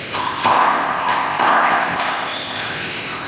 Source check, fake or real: fake